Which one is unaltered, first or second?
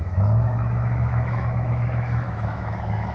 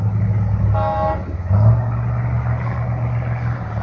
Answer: second